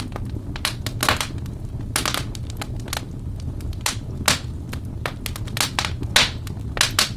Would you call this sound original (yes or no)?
yes